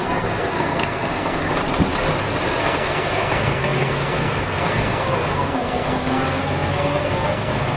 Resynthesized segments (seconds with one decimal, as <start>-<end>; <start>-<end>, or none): 0.0-1.5; 2.6-7.8